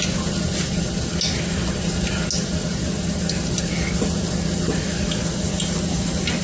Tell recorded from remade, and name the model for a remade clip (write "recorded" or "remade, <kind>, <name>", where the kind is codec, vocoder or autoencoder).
recorded